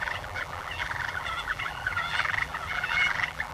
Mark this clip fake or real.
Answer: fake